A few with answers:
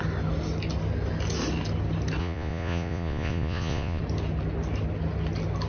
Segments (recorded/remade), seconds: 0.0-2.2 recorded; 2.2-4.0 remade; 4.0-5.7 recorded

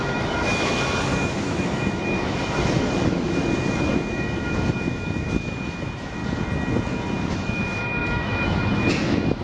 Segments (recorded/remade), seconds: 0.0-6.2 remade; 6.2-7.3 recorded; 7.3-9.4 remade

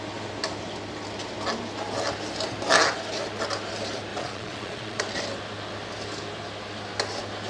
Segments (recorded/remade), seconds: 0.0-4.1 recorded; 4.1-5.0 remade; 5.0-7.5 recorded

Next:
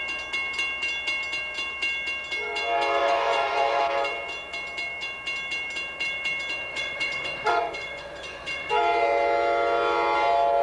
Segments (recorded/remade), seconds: 0.0-3.0 recorded; 3.0-3.8 remade; 3.8-6.7 recorded; 6.7-8.7 remade; 8.7-10.6 recorded

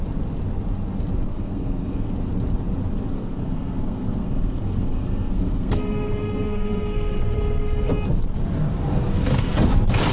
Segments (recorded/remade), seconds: 0.0-1.3 recorded; 1.3-2.1 remade; 2.1-3.1 recorded; 3.1-7.9 remade; 7.9-8.9 recorded; 8.9-9.5 remade; 9.5-10.1 recorded

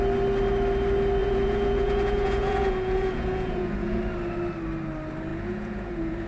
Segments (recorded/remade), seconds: 0.0-1.2 recorded; 1.2-4.0 remade; 4.0-5.3 recorded; 5.3-6.3 remade

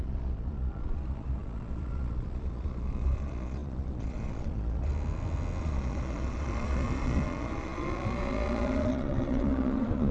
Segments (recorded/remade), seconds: 0.0-4.9 remade; 4.9-5.6 recorded; 5.6-10.1 remade

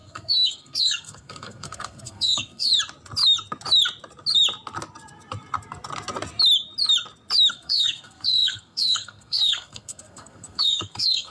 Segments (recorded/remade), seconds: 0.0-2.7 remade; 2.7-7.5 recorded; 7.5-11.3 remade